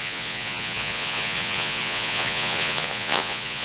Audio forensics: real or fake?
fake